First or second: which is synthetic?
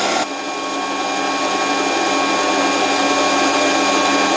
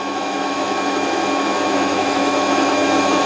second